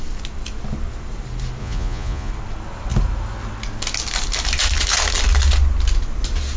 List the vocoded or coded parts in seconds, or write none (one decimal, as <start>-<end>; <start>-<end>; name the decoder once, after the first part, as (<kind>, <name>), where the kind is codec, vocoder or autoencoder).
1.6-2.3 (vocoder, Vocos)